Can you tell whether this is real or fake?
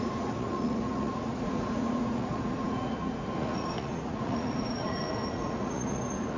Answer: fake